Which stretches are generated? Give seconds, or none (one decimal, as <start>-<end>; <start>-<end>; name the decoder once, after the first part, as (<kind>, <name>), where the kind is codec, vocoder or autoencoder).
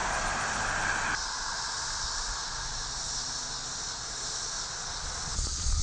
4.8-5.8 (vocoder, Vocos)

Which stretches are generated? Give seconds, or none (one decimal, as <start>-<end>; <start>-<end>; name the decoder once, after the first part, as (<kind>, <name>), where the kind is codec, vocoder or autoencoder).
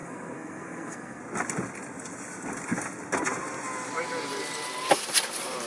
0.0-1.2 (codec, SNAC)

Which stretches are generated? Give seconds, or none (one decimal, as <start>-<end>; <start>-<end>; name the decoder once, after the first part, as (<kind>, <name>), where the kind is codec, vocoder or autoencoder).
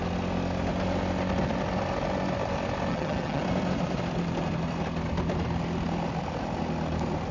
2.9-3.4 (vocoder, HiFi-GAN)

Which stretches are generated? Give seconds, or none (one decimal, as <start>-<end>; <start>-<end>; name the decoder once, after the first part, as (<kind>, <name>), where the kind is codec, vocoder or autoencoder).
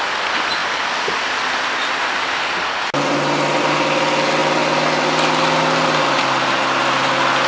none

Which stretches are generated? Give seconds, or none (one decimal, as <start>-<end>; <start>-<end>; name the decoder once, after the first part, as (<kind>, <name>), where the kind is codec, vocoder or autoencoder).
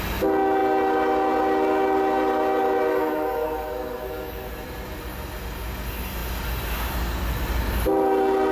2.9-4.5 (codec, DAC)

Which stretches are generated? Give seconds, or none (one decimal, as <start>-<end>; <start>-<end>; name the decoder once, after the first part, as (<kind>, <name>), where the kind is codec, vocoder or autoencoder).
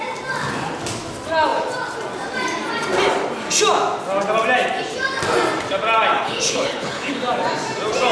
6.1-7.2 (codec, HILCodec)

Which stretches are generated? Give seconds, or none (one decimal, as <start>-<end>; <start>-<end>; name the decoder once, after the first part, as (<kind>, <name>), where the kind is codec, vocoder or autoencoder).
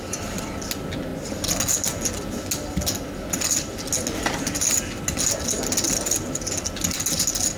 none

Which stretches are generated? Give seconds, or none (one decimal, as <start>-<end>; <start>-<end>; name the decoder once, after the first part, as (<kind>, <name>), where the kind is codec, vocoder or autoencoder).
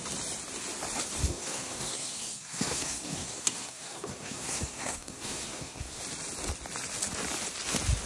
1.2-6.0 (codec, SNAC)